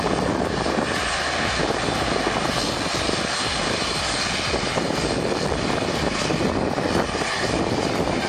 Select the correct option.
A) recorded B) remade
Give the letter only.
A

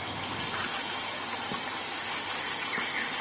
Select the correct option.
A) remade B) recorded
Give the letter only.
B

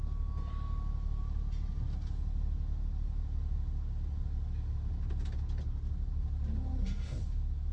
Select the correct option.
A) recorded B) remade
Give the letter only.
A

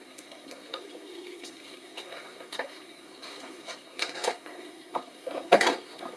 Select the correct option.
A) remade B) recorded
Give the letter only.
A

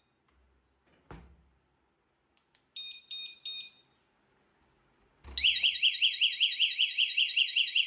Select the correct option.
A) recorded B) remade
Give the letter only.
A